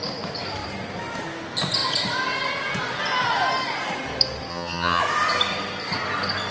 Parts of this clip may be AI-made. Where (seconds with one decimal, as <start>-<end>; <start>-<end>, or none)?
4.5-5.0